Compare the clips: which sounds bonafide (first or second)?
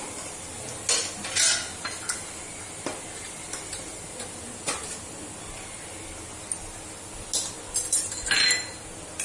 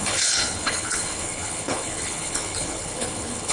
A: first